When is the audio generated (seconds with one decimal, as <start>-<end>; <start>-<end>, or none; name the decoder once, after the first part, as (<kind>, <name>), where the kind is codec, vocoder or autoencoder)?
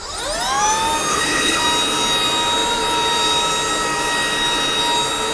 1.1-1.6 (codec, HILCodec)